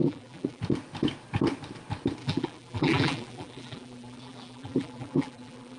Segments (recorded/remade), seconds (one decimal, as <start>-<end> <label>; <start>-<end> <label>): 0.0-0.6 remade; 0.6-2.2 recorded; 2.2-5.8 remade